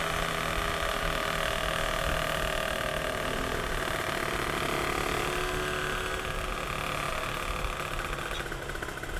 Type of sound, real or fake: real